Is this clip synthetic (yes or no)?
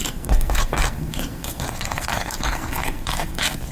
yes